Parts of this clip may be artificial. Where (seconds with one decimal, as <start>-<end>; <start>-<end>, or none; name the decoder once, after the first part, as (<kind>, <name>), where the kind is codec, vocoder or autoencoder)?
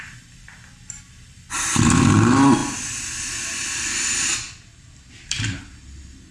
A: none